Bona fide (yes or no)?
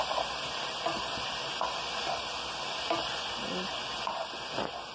yes